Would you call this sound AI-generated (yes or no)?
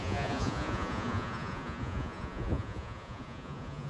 yes